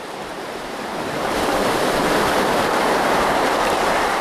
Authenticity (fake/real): fake